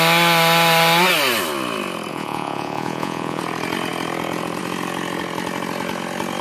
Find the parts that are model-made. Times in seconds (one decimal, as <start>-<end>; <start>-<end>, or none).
2.1-3.4